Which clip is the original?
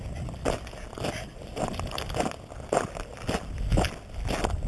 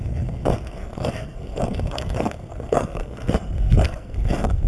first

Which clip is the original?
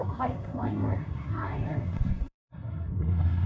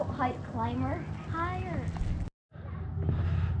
second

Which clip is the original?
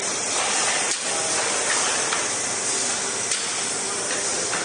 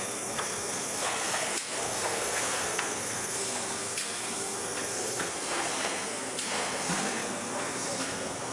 first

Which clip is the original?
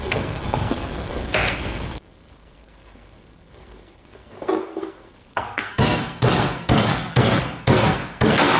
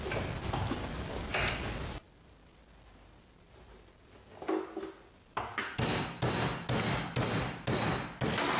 second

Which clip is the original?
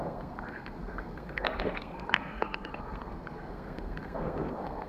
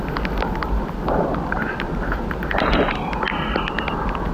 second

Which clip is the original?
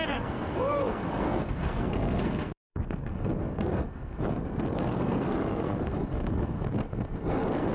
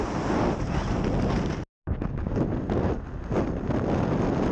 second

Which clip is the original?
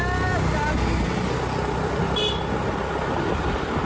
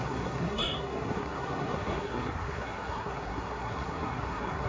first